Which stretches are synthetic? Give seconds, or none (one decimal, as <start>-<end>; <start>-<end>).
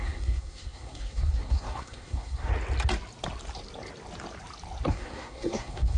0.0-2.5; 4.9-6.0